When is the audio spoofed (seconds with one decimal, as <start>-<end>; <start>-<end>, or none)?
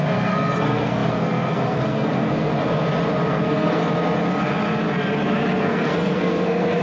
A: 0.0-2.5; 3.3-3.8; 5.6-6.8